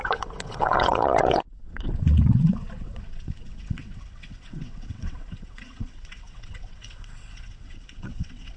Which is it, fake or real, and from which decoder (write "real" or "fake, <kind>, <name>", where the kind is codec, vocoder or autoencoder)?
fake, vocoder, WaveNeXt